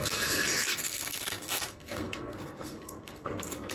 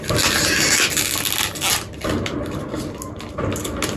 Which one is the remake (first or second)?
first